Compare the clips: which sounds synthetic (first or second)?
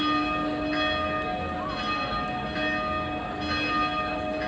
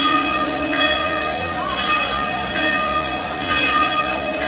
second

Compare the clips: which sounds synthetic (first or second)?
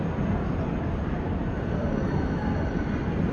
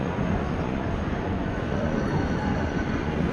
second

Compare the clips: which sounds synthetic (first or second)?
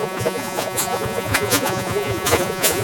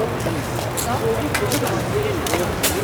first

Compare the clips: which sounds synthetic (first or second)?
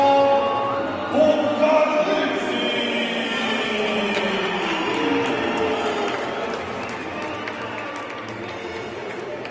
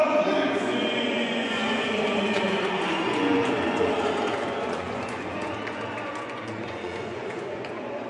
second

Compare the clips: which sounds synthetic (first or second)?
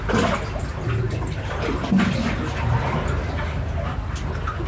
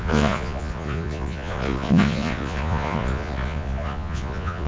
second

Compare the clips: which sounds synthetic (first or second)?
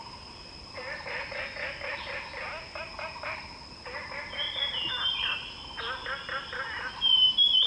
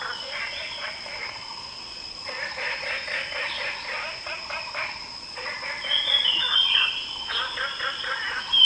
second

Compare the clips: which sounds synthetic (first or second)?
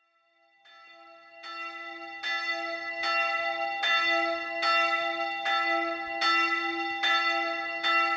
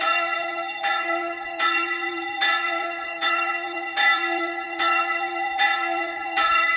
second